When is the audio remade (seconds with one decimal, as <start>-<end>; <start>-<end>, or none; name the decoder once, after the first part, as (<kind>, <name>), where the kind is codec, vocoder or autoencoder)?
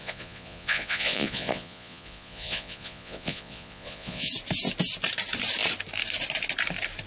0.0-4.3 (vocoder, Vocos)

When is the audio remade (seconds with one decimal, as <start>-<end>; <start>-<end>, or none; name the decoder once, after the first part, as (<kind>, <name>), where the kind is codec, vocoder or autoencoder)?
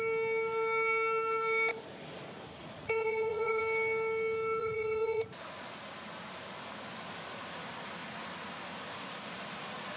2.6-3.6 (vocoder, Vocos); 4.6-5.3